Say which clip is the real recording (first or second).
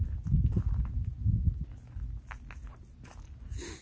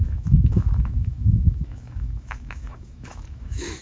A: first